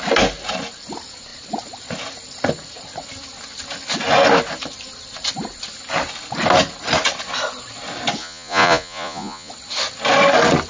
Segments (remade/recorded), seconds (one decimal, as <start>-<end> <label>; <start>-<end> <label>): 0.0-8.2 recorded; 8.2-9.5 remade; 9.5-10.7 recorded